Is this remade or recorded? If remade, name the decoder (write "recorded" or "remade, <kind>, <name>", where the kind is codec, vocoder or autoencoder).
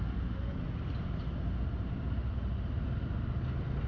recorded